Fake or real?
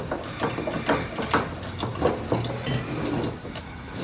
real